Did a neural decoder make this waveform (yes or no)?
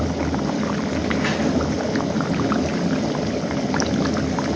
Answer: no